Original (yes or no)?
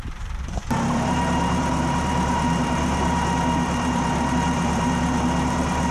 no